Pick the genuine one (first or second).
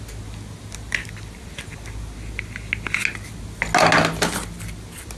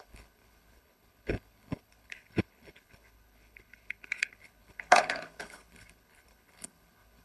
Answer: first